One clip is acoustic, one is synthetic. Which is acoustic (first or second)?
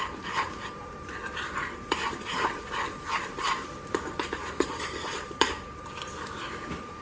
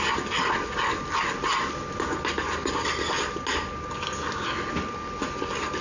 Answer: second